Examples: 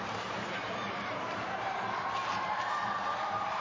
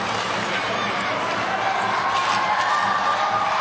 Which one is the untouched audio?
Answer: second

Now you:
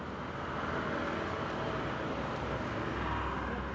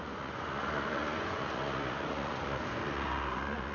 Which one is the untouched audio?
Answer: first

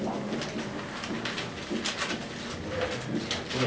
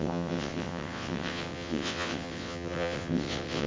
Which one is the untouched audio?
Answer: first